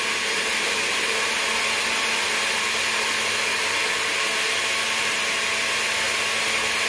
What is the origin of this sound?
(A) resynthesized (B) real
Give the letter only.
B